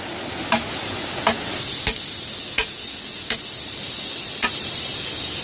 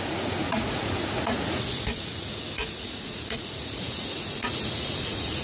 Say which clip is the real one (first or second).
first